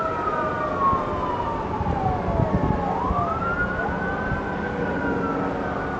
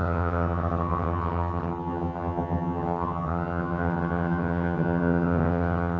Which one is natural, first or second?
first